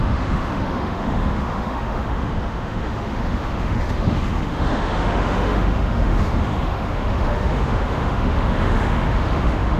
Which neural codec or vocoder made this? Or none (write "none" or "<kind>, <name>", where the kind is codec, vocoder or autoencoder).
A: autoencoder, DAC-VAE